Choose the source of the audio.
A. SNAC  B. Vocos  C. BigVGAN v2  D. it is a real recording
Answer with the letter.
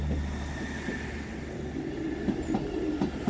D